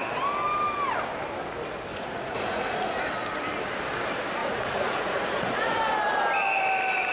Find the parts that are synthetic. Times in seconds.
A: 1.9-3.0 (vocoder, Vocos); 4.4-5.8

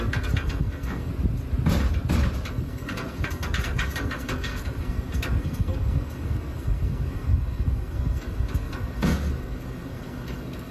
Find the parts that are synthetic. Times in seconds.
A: 0.0-1.1 (codec, SNAC); 2.5-10.7

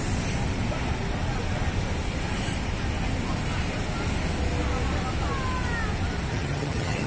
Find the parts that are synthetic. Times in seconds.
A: 6.3-7.1 (vocoder, HiFi-GAN)

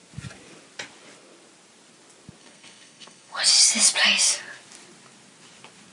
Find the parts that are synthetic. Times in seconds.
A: 2.4-3.4 (codec, SNAC)

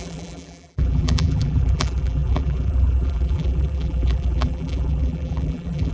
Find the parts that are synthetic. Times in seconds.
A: 0.0-5.9 (vocoder, BigVGAN v2)

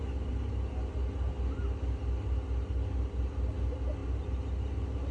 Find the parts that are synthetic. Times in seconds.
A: none